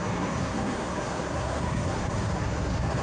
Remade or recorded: remade